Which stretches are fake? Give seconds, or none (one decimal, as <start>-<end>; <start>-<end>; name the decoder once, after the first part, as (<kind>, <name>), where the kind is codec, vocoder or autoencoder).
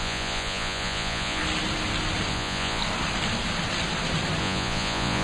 0.0-1.4 (vocoder, Vocos); 2.3-2.8; 4.4-5.2